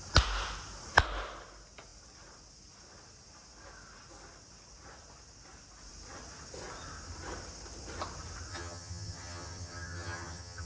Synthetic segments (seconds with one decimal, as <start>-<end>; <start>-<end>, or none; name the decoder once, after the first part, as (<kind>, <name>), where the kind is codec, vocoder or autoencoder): 8.5-10.7 (vocoder, HiFi-GAN)